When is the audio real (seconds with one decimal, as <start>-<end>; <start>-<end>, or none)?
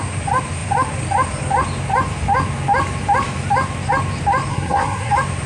0.0-4.5; 5.1-5.5